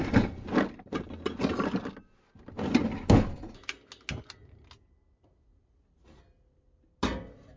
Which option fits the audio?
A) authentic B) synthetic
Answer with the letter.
A